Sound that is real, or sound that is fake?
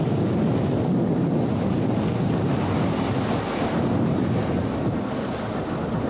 real